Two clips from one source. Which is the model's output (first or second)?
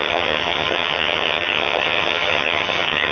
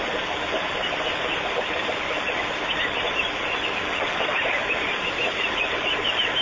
first